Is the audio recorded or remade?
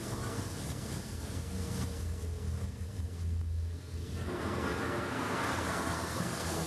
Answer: remade